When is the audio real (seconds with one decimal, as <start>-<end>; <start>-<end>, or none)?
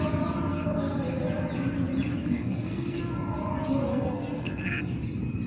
0.0-0.5; 1.0-2.2; 3.0-3.9; 4.8-5.5